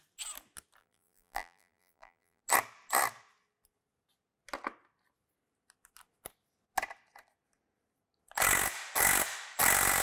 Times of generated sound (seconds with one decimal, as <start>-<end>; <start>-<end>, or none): 0.8-2.4